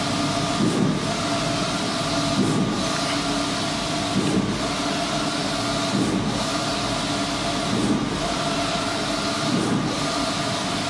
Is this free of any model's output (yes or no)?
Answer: yes